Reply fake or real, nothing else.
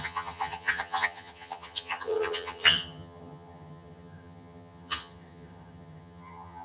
fake